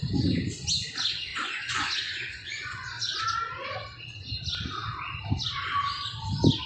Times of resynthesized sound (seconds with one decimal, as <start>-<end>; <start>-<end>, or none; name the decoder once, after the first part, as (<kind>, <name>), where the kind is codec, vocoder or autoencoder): 1.3-2.9 (vocoder, Vocos)